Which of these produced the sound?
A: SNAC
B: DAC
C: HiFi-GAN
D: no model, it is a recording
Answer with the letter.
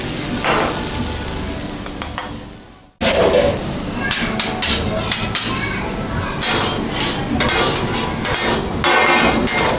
D